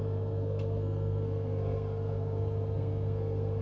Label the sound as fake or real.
fake